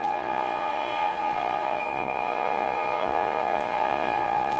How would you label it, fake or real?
fake